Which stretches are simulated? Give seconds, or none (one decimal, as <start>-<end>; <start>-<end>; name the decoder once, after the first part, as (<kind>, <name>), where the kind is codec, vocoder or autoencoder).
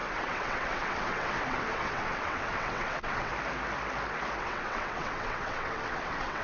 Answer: 0.0-3.3 (vocoder, WaveNeXt); 4.4-6.4